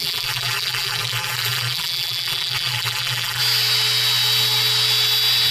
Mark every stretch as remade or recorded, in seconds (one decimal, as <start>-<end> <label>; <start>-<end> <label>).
0.0-3.4 remade; 3.4-5.5 recorded

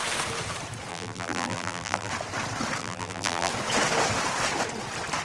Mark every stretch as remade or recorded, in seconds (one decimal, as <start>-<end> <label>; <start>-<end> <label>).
0.0-0.9 recorded; 0.9-2.1 remade; 2.1-2.8 recorded; 2.8-3.5 remade; 3.5-5.2 recorded

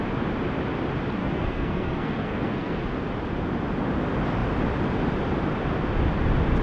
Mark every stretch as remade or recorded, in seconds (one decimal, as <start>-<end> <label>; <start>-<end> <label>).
0.0-1.2 recorded; 1.2-2.8 remade; 2.8-6.6 recorded